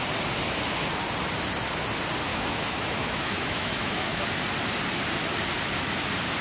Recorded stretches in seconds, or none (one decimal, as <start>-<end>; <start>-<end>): 0.0-2.3; 4.2-6.4